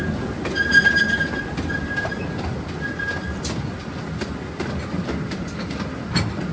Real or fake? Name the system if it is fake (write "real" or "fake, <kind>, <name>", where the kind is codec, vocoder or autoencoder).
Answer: real